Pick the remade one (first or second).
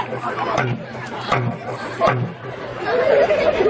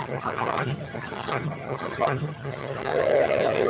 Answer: second